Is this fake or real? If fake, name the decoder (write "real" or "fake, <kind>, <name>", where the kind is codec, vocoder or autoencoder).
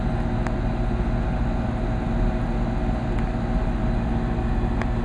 real